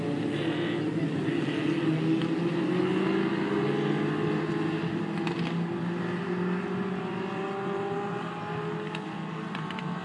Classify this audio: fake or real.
real